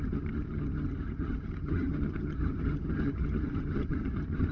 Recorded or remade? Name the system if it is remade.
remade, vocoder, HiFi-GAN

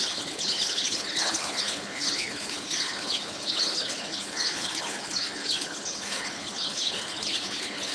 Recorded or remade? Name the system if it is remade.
remade, codec, HILCodec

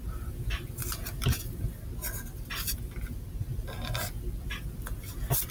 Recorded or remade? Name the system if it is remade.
recorded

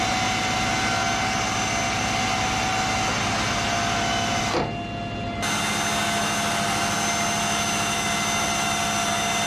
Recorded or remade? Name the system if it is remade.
recorded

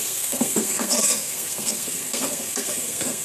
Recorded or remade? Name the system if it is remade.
remade, codec, SNAC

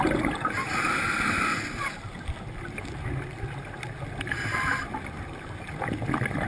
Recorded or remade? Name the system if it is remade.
recorded